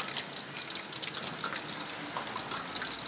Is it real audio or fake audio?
real